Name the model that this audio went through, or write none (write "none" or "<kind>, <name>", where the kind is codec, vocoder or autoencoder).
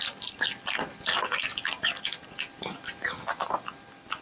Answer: none